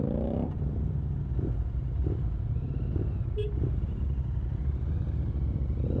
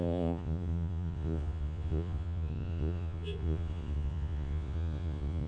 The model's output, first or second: second